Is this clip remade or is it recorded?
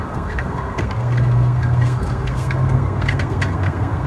remade